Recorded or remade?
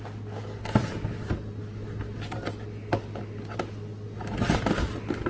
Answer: recorded